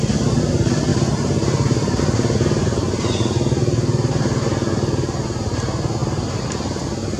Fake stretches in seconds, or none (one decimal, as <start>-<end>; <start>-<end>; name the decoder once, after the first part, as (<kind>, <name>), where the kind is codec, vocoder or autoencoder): none